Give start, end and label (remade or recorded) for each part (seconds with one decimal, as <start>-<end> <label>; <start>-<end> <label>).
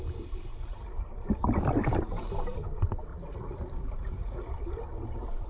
0.0-0.5 recorded; 0.5-1.1 remade; 1.1-3.1 recorded; 3.1-4.5 remade; 4.5-5.5 recorded